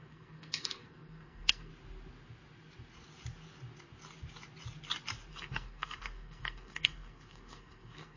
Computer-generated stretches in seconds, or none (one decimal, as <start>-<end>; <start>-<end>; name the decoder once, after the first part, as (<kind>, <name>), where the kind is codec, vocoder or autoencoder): 0.0-1.7 (codec, SNAC); 5.3-8.2